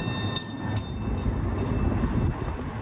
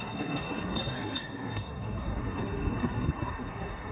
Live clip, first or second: first